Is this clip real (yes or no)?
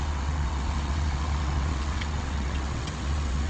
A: no